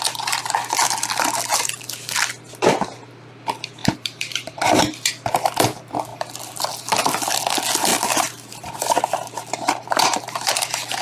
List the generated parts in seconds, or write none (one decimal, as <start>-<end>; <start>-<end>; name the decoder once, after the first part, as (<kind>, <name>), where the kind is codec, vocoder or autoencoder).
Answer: 3.8-5.1 (vocoder, BigVGAN v2); 7.9-10.5